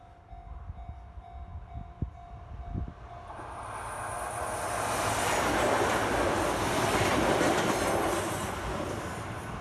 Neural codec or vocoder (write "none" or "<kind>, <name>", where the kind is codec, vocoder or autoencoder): none